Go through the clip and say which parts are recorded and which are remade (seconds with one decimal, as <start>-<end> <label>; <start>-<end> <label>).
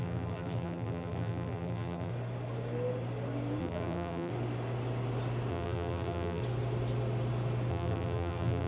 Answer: 0.0-2.1 remade; 2.1-3.6 recorded; 3.6-4.3 remade; 4.3-5.5 recorded; 5.5-6.4 remade; 6.4-7.7 recorded; 7.7-8.7 remade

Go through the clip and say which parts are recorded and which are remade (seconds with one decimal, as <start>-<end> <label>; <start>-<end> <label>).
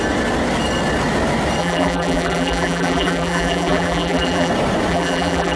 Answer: 0.0-1.6 recorded; 1.6-4.5 remade; 4.5-4.9 recorded; 4.9-5.6 remade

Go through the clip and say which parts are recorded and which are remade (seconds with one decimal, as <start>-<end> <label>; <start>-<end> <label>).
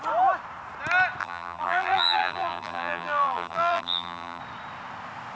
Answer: 0.0-1.2 recorded; 1.2-4.4 remade; 4.4-5.3 recorded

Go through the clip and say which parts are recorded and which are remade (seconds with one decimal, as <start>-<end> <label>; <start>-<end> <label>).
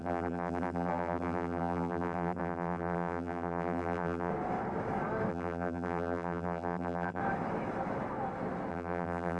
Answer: 0.0-4.3 remade; 4.3-5.3 recorded; 5.3-7.2 remade; 7.2-8.7 recorded; 8.7-9.4 remade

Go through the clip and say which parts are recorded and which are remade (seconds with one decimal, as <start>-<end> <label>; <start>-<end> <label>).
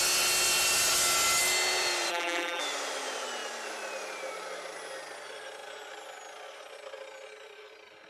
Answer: 0.0-2.1 recorded; 2.1-2.6 remade; 2.6-8.1 recorded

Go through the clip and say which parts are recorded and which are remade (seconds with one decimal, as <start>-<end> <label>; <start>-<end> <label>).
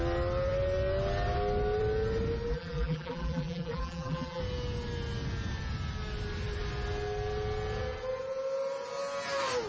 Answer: 0.0-2.5 recorded; 2.5-4.4 remade; 4.4-9.7 recorded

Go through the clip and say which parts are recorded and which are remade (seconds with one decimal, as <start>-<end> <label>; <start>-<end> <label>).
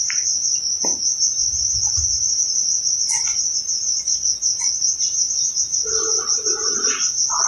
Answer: 0.0-1.4 recorded; 1.4-3.2 remade; 3.2-7.5 recorded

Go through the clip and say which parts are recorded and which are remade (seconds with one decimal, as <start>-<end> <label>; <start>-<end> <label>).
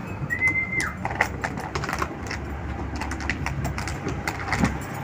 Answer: 0.0-3.9 recorded; 3.9-4.6 remade; 4.6-5.0 recorded